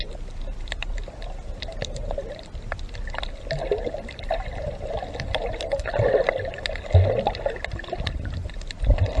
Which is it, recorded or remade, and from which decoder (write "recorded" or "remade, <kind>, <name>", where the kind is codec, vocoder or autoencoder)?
recorded